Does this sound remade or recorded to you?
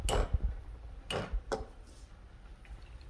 recorded